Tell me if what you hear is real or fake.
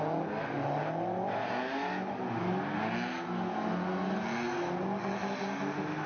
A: real